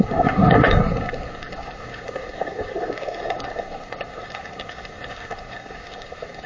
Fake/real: fake